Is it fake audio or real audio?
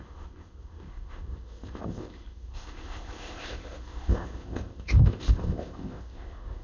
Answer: fake